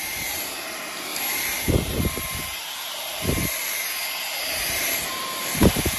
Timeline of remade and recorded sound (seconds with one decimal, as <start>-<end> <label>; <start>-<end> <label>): 0.0-1.1 remade; 1.1-1.7 recorded; 1.7-6.0 remade